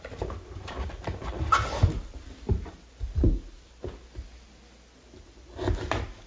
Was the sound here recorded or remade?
recorded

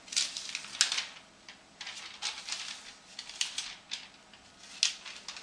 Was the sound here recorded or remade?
recorded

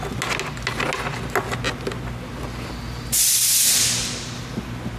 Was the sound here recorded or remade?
recorded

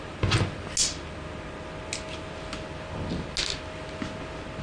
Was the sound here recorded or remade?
recorded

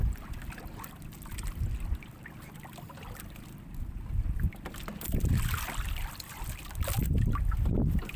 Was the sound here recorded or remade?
recorded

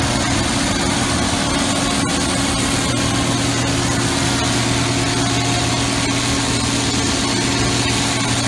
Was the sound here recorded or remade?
recorded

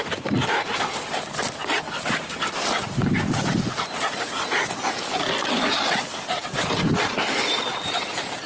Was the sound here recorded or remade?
recorded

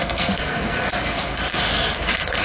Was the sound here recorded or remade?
remade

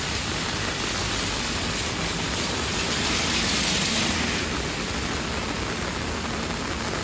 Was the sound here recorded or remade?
recorded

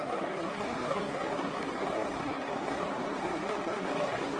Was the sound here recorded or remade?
remade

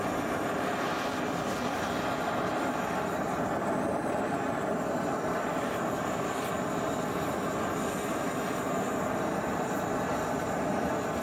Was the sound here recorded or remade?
recorded